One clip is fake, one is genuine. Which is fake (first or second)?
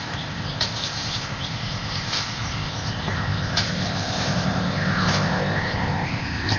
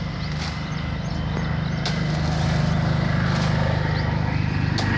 first